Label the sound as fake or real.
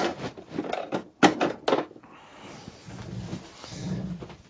real